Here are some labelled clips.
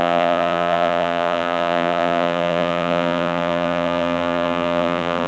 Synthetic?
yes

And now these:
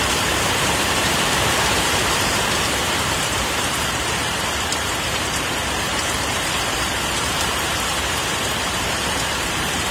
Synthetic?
yes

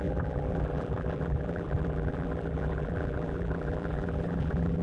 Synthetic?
yes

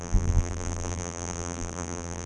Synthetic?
yes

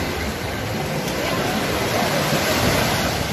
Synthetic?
yes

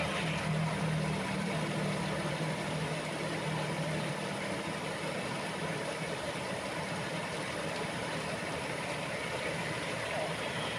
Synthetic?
yes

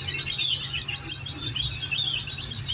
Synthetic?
no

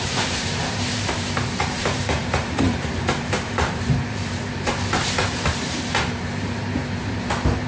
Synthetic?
yes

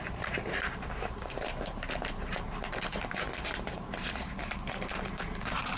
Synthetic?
yes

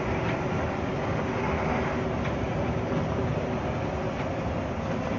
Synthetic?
no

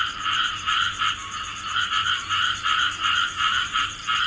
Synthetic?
yes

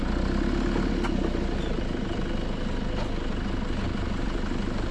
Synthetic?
no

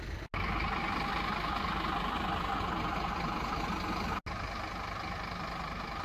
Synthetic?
no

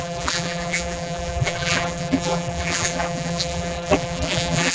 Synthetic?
yes